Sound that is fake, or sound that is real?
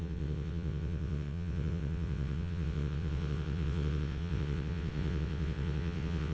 fake